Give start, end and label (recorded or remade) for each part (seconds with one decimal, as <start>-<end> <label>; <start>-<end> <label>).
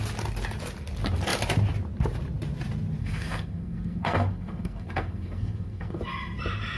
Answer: 0.0-3.0 recorded; 3.0-6.0 remade; 6.0-6.8 recorded